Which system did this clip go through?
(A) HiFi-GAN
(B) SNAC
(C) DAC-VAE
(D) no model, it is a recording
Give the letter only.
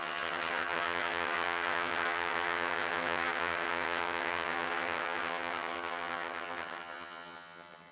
A